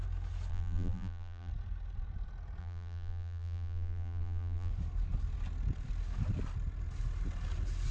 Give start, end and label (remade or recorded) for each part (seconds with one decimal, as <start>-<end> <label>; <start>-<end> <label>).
0.0-0.5 recorded; 0.5-1.5 remade; 1.5-2.6 recorded; 2.6-4.7 remade; 4.7-7.9 recorded